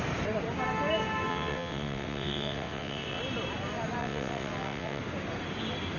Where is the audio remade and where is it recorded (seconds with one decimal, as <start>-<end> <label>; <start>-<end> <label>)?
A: 0.0-1.3 recorded; 1.3-3.2 remade; 3.2-4.0 recorded; 4.0-5.0 remade; 5.0-6.0 recorded